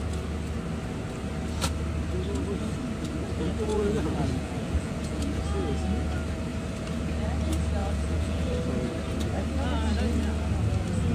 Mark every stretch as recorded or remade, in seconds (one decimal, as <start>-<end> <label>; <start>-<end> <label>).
0.0-3.7 recorded; 3.7-5.4 remade; 5.4-7.8 recorded; 7.8-8.5 remade; 8.5-11.1 recorded